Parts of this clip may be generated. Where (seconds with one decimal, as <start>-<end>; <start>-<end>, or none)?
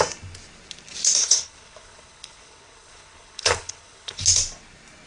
1.2-4.2